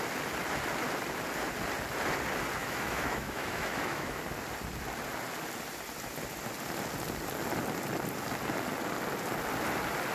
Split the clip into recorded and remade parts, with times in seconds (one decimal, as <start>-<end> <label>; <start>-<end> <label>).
0.0-2.6 recorded; 2.6-4.2 remade; 4.2-10.1 recorded